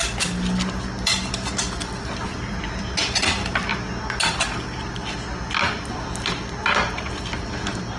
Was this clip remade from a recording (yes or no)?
no